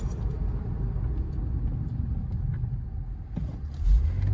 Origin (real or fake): real